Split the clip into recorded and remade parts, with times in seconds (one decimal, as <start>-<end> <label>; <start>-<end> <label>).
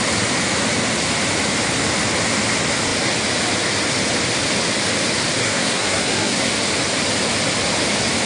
0.0-5.4 recorded; 5.4-6.5 remade; 6.5-8.3 recorded